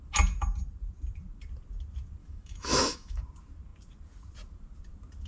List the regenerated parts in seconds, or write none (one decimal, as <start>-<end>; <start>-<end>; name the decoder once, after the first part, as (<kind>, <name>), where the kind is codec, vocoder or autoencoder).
2.2-3.2 (autoencoder, DAC-VAE)